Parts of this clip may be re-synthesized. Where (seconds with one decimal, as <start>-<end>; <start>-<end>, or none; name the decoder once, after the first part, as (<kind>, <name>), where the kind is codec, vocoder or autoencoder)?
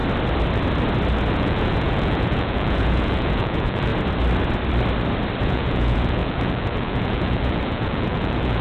1.3-3.9 (vocoder, Vocos); 5.4-8.6